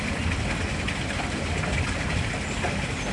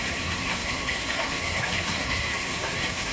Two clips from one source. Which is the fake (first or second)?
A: second